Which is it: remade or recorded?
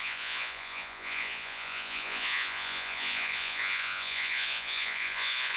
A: remade